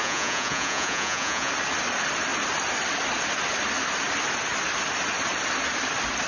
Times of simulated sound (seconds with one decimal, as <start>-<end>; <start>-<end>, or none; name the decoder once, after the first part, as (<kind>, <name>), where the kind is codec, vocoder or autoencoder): 0.0-1.5 (vocoder, Vocos)